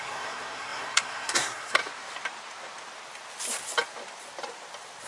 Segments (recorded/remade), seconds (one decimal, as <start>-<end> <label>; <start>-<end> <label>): 0.0-1.8 remade; 1.8-5.1 recorded